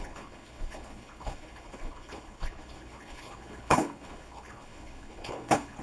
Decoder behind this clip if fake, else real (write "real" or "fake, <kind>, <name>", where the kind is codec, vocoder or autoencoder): fake, codec, HILCodec